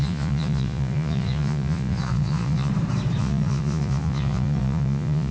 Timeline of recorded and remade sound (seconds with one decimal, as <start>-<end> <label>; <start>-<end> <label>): 0.0-2.7 remade; 2.7-3.2 recorded; 3.2-5.3 remade